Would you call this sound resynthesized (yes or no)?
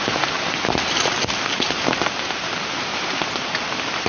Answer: yes